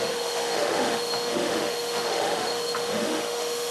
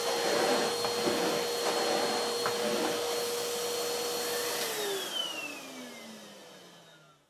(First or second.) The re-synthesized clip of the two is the first